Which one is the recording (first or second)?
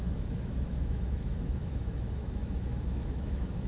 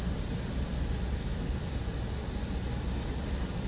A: second